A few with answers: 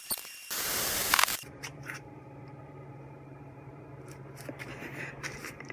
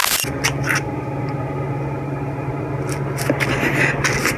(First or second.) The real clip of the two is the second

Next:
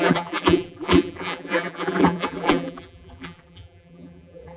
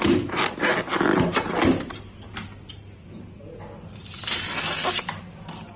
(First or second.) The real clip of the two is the second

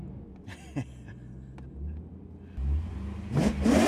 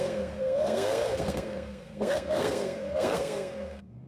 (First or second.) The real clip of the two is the first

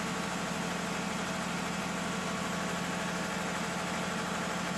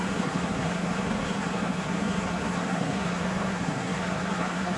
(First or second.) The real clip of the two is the first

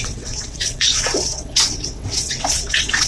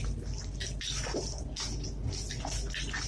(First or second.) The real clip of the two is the second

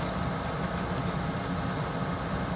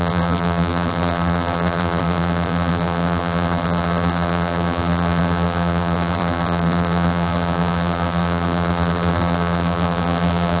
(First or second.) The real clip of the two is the first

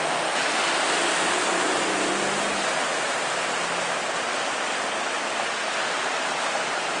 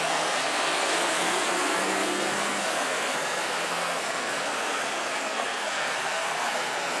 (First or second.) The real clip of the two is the first